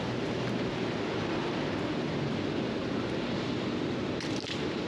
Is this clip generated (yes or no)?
no